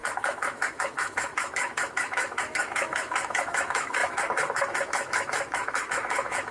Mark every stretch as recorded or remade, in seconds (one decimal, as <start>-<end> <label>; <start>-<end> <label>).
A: 0.0-6.5 remade